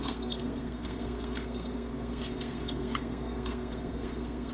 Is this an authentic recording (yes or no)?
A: no